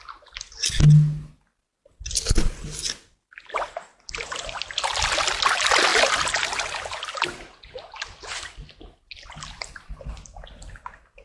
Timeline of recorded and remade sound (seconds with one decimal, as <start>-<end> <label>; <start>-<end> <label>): 0.0-11.2 recorded